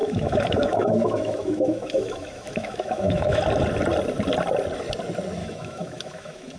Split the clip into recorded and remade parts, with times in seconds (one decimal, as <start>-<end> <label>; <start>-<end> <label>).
0.0-3.4 remade; 3.4-5.4 recorded; 5.4-6.6 remade